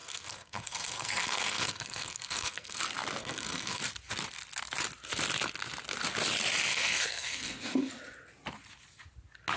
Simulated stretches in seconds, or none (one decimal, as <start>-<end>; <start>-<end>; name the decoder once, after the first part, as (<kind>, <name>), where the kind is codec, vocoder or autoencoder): 0.0-2.8 (codec, SNAC); 3.2-3.8; 6.7-7.9